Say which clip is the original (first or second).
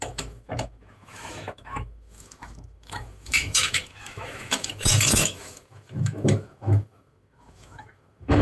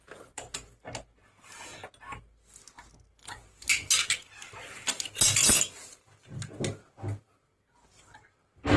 second